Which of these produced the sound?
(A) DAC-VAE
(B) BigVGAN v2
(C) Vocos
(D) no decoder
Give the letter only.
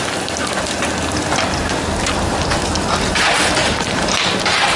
D